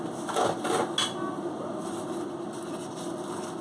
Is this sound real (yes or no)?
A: yes